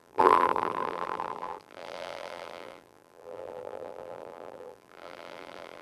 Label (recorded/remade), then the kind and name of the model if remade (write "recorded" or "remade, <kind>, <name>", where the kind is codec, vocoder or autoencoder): remade, vocoder, BigVGAN v2